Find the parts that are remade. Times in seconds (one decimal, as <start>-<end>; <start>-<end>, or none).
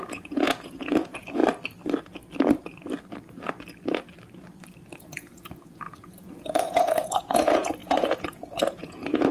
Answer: 0.0-1.4; 5.0-9.3